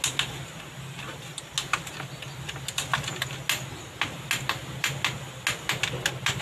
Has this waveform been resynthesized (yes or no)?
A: no